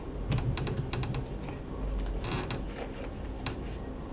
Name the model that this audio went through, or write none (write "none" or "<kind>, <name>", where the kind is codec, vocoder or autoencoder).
none